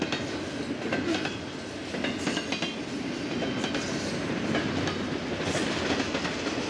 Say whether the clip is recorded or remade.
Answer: recorded